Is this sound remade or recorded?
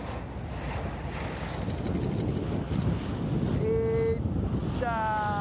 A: recorded